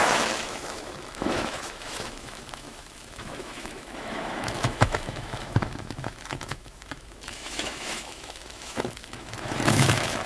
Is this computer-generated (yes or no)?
yes